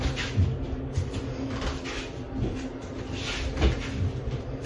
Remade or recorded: recorded